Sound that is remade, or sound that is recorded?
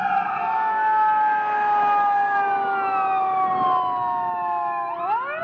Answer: recorded